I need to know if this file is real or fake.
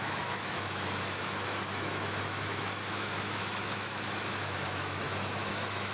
fake